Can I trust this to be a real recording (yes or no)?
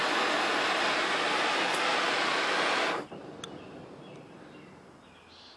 yes